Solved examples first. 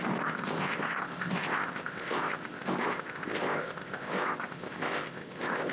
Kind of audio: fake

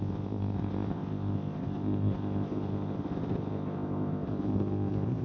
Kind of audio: fake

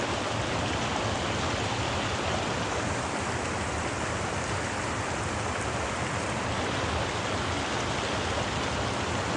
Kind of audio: real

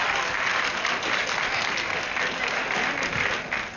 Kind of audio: real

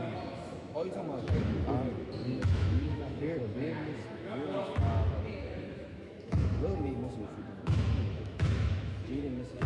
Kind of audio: fake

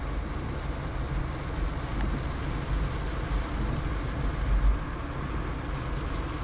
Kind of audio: real